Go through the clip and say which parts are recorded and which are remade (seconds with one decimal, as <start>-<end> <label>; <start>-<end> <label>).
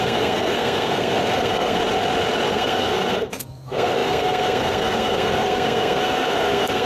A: 0.0-1.8 remade; 1.8-2.5 recorded; 2.5-6.9 remade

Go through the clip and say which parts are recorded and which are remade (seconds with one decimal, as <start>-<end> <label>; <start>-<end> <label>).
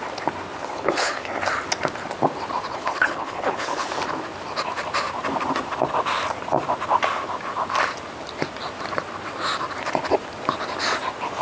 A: 0.0-0.6 recorded; 0.6-1.4 remade; 1.4-2.7 recorded; 2.7-3.9 remade; 3.9-11.4 recorded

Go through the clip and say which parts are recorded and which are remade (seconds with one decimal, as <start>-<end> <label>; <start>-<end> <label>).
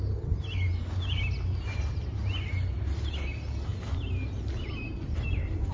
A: 0.0-5.7 recorded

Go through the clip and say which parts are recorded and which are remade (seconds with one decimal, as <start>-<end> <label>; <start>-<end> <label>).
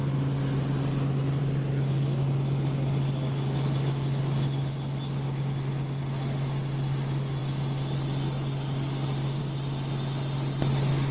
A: 0.0-11.1 recorded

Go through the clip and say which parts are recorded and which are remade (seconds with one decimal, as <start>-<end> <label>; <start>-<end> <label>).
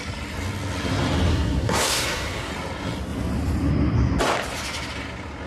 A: 0.0-1.3 recorded; 1.3-2.5 remade; 2.5-5.5 recorded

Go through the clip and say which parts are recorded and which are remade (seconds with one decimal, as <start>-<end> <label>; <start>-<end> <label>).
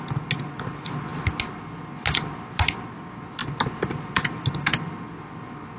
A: 0.0-5.8 recorded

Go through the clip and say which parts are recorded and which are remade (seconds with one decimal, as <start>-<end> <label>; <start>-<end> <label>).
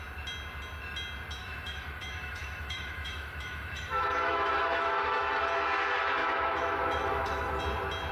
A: 0.0-1.4 recorded; 1.4-5.4 remade; 5.4-6.2 recorded; 6.2-7.6 remade; 7.6-8.1 recorded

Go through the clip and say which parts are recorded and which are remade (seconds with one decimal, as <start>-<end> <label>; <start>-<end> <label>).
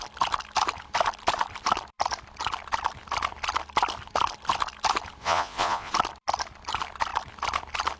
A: 0.0-5.2 recorded; 5.2-5.9 remade; 5.9-8.0 recorded